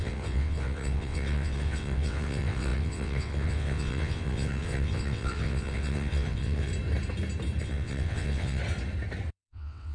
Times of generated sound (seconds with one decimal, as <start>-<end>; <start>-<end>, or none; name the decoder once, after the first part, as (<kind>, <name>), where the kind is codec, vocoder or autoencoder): 0.0-6.7 (vocoder, WaveNeXt); 7.6-8.6; 9.3-9.9